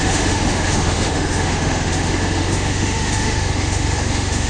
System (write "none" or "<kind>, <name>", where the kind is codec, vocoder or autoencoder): autoencoder, DAC-VAE